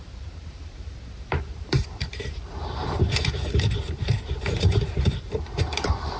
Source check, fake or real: fake